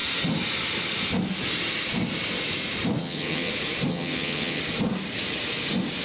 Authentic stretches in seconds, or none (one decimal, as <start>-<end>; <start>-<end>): 0.0-3.0; 3.5-3.9; 4.6-6.0